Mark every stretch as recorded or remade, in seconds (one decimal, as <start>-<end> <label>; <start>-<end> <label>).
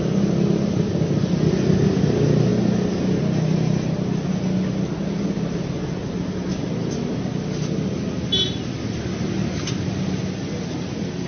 0.0-11.3 recorded